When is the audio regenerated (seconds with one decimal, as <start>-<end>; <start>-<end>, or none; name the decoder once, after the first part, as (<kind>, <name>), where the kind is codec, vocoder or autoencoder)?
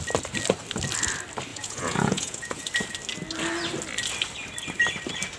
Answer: 1.5-2.6 (vocoder, Vocos)